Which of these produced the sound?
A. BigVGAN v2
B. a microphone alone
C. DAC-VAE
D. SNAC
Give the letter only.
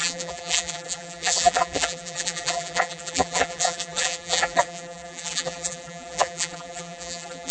A